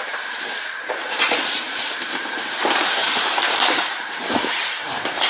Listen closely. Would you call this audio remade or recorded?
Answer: remade